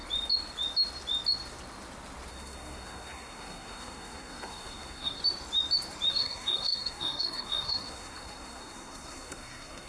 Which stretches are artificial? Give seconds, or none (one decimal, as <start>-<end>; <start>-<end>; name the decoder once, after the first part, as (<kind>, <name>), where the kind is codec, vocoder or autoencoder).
2.3-5.2 (codec, SNAC); 6.1-9.9